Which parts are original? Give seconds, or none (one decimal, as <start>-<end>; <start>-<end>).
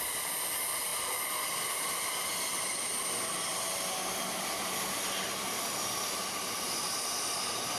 0.0-7.8